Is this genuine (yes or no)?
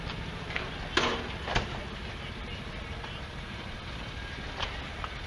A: yes